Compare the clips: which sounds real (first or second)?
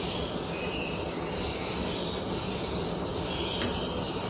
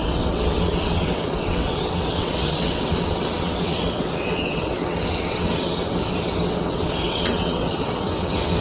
first